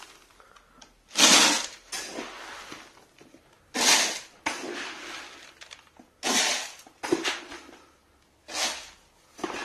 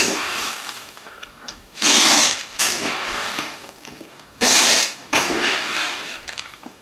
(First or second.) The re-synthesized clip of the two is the second